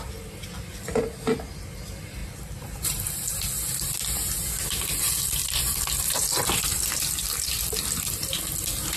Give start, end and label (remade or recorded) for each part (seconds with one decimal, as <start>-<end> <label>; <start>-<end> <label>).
0.0-2.2 recorded; 2.2-3.1 remade; 3.1-5.4 recorded; 5.4-6.1 remade; 6.1-9.0 recorded